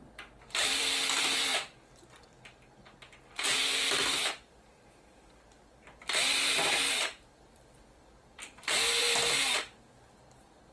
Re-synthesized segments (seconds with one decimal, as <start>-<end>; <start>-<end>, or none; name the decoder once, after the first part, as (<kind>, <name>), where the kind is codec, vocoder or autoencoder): 0.0-1.5 (vocoder, BigVGAN v2); 4.3-10.7